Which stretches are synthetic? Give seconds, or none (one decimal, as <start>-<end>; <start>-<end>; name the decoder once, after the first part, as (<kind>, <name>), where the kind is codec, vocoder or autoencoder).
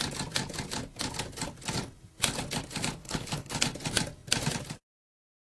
3.0-3.6 (codec, HILCodec)